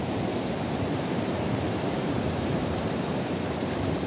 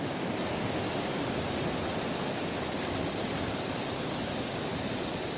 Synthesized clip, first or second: first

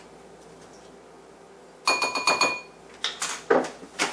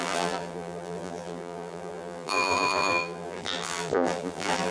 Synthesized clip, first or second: second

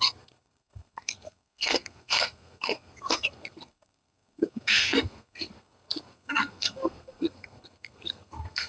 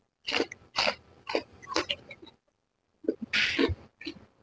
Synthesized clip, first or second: first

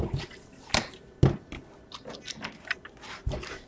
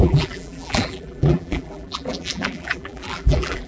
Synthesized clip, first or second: second